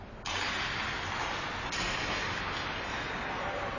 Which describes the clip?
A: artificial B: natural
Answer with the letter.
B